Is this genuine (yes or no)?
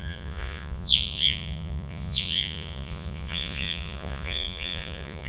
no